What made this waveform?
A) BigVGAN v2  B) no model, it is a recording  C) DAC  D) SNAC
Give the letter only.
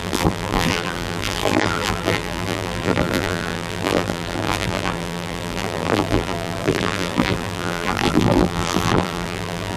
A